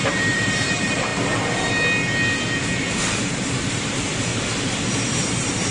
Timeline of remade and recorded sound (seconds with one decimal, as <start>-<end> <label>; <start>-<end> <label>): 0.0-1.1 remade; 1.1-2.6 recorded; 2.6-4.3 remade; 4.3-5.1 recorded; 5.1-5.7 remade